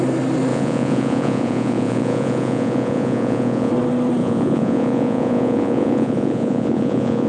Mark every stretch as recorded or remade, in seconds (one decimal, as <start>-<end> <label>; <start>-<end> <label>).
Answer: 0.0-0.5 recorded; 0.5-3.7 remade; 3.7-4.2 recorded; 4.2-7.3 remade